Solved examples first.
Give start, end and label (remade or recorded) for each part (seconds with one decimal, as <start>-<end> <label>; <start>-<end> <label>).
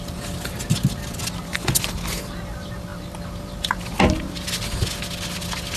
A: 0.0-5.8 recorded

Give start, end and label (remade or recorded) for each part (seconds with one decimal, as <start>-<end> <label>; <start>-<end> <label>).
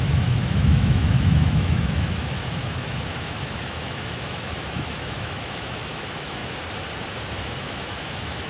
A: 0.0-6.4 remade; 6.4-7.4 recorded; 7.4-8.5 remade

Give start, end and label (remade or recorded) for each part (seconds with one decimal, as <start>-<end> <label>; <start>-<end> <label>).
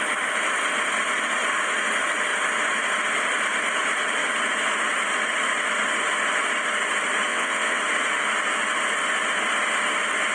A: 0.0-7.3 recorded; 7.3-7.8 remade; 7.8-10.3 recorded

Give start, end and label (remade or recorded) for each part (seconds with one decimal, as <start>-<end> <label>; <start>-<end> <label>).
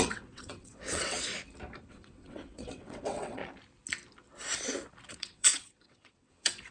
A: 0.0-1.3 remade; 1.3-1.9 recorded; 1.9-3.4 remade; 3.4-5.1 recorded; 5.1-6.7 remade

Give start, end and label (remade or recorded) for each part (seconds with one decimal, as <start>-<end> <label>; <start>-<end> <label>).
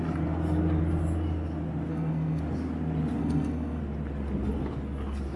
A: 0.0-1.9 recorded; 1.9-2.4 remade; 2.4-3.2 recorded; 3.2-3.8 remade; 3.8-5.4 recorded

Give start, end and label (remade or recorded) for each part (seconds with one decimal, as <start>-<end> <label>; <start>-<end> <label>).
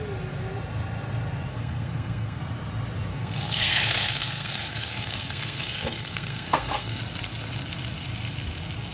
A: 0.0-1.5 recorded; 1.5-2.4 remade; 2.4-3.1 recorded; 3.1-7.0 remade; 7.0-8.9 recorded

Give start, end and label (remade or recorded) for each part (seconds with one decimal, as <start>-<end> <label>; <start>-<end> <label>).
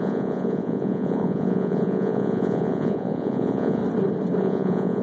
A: 0.0-3.8 remade; 3.8-4.4 recorded; 4.4-5.0 remade